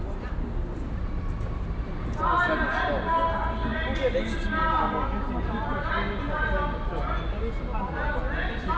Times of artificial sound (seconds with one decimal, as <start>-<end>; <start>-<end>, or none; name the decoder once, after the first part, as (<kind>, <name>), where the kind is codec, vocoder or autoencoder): none